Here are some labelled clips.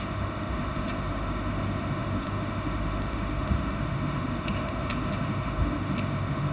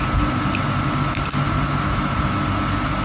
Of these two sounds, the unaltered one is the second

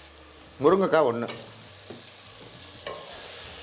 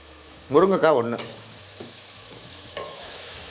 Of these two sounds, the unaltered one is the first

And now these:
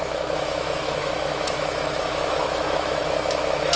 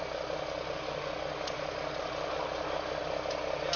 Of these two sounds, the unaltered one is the second